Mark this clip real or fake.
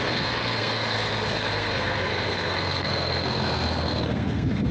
fake